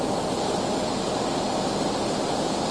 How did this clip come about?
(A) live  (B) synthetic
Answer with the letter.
A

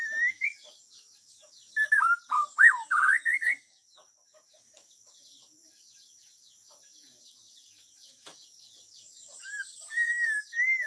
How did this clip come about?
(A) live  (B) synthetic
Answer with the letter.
B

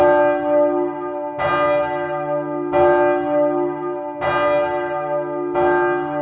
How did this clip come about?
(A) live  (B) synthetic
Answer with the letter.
A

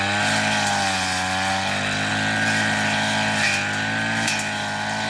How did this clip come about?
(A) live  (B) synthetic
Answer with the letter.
A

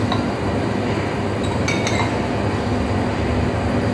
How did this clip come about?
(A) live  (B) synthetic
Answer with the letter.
A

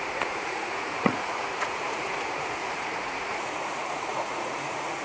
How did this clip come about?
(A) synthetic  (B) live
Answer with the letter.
A